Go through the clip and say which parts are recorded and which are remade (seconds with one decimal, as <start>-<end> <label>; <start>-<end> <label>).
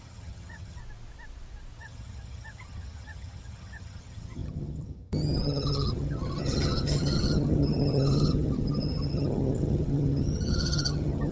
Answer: 0.0-0.8 remade; 0.8-1.8 recorded; 1.8-11.3 remade